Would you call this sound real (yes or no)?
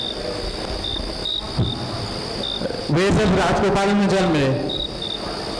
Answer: yes